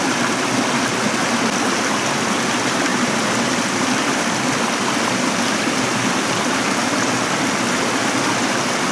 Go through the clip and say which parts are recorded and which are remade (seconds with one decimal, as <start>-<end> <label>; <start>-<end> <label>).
0.0-8.9 recorded